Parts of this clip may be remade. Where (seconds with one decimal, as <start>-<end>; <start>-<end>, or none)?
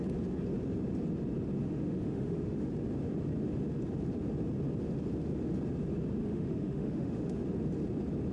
1.6-2.7; 6.2-7.4